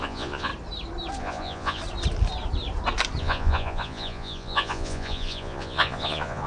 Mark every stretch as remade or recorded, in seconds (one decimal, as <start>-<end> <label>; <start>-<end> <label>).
0.0-0.5 remade; 0.5-1.2 recorded; 1.2-1.8 remade; 1.8-3.2 recorded; 3.2-6.5 remade